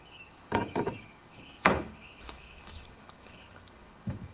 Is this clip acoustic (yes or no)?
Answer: no